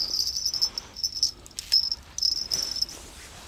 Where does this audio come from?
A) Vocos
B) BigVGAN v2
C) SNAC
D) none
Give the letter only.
D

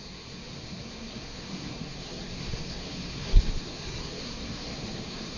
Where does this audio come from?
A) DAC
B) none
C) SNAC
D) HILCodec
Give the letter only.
C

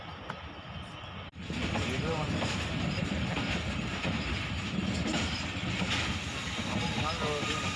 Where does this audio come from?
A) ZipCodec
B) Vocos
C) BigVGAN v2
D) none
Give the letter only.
D